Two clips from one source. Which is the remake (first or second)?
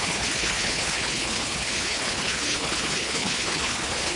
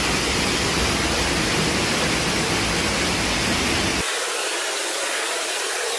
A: first